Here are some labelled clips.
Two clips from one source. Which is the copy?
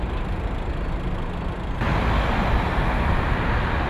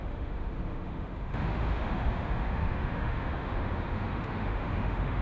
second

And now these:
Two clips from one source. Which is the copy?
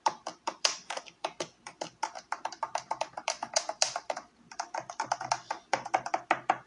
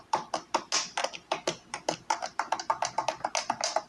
first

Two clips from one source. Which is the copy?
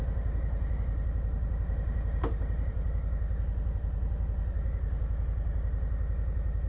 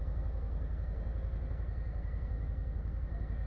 second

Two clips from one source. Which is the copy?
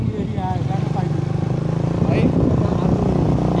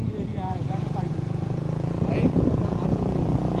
second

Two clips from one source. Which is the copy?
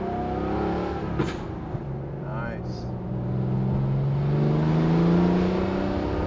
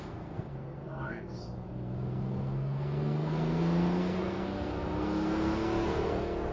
second